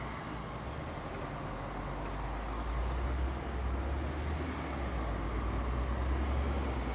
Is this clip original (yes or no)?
yes